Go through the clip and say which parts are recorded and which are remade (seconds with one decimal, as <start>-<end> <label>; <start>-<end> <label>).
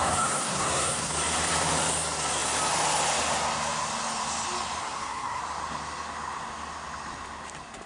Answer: 0.0-1.1 remade; 1.1-4.8 recorded; 4.8-5.4 remade; 5.4-7.9 recorded